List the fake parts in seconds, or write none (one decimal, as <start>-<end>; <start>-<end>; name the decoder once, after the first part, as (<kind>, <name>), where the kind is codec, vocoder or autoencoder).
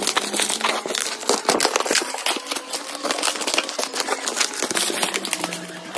none